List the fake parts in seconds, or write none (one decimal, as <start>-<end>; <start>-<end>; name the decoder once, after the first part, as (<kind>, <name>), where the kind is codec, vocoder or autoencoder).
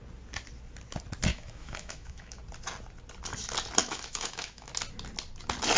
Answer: 1.3-2.4 (autoencoder, DAC-VAE); 3.8-4.7